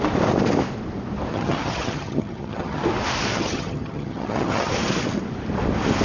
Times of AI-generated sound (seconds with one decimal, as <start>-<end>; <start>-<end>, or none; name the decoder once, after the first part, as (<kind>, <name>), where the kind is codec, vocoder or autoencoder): 1.3-2.8 (vocoder, HiFi-GAN); 3.3-4.7